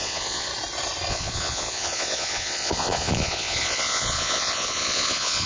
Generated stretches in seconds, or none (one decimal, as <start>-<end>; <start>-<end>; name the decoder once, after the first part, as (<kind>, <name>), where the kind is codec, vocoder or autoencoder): 0.0-0.5 (vocoder, Vocos); 1.1-5.5